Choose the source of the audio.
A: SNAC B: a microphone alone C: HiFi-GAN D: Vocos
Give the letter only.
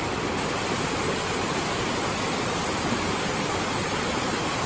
B